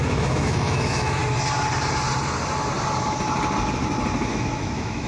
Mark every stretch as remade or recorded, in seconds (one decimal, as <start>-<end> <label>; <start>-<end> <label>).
0.0-1.2 remade; 1.2-4.3 recorded; 4.3-5.1 remade